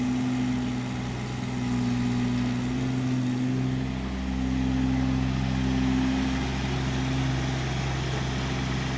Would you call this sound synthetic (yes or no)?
no